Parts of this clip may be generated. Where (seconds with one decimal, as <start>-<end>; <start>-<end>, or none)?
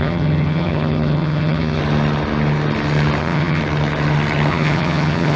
0.0-1.8; 3.2-3.6; 4.5-5.4